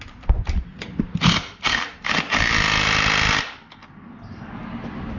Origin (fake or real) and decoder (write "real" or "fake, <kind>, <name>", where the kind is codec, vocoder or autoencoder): real